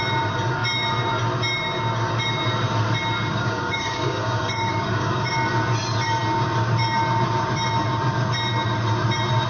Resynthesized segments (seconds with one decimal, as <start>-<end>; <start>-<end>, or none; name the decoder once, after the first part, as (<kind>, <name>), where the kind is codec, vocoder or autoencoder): 3.3-5.3 (codec, DAC)